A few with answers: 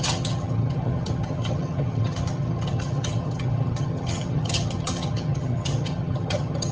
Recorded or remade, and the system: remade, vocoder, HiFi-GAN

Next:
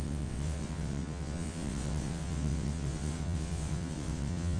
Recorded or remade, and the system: remade, vocoder, WaveNeXt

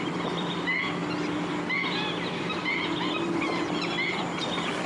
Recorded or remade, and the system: remade, vocoder, BigVGAN v2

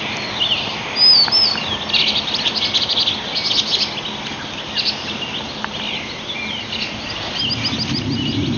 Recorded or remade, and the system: recorded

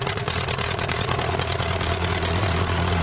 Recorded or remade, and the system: remade, vocoder, Vocos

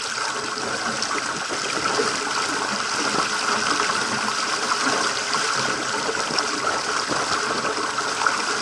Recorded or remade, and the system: recorded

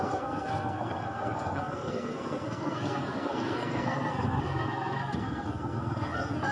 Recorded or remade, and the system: remade, codec, SNAC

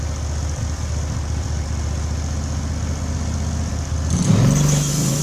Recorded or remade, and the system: recorded